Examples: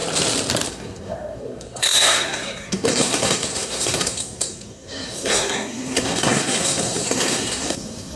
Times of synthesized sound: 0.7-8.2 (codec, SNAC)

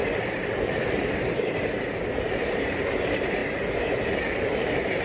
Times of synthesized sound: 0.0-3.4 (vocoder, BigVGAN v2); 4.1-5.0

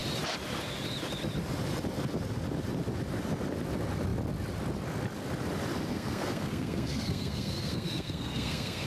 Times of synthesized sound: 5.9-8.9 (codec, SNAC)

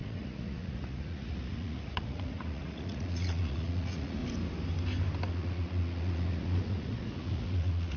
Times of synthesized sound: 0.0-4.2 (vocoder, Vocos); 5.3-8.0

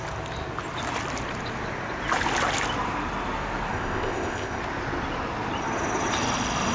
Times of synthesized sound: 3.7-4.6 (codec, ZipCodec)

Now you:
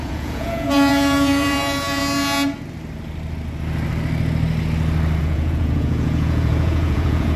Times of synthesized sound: 0.0-2.0 (vocoder, Vocos); 5.2-7.4